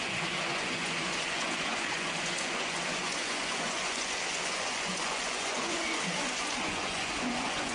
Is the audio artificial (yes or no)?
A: yes